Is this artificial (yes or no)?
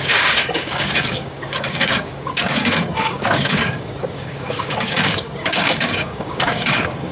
yes